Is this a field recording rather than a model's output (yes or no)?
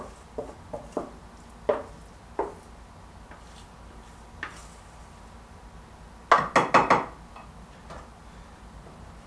yes